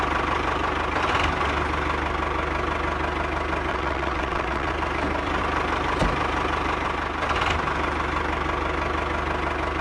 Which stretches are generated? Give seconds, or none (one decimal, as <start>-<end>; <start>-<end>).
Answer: 3.7-4.7